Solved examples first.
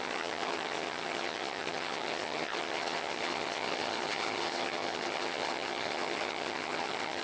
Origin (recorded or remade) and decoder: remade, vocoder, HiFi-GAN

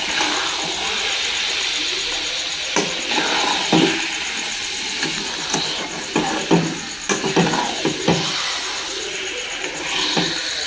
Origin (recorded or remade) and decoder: recorded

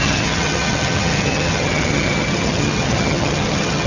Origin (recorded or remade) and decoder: remade, vocoder, HiFi-GAN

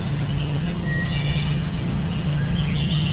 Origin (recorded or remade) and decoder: remade, vocoder, HiFi-GAN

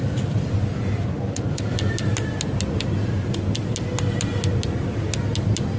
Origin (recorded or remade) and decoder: recorded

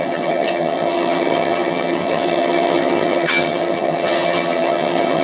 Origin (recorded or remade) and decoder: remade, vocoder, HiFi-GAN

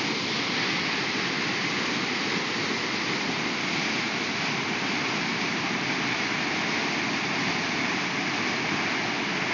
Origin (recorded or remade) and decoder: recorded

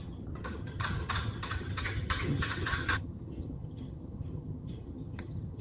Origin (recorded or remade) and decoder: remade, vocoder, HiFi-GAN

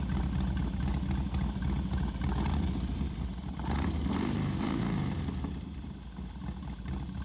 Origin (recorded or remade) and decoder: recorded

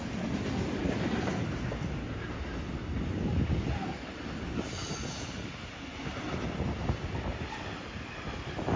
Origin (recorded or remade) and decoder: recorded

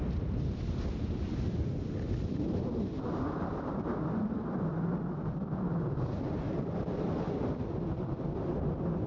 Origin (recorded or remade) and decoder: recorded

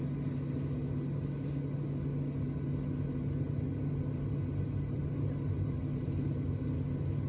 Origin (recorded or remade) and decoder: recorded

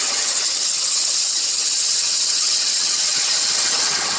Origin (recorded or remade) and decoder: remade, vocoder, HiFi-GAN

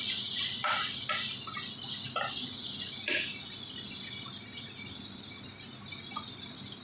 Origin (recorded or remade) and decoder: recorded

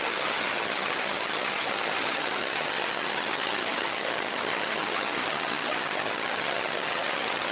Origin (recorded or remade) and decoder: remade, vocoder, HiFi-GAN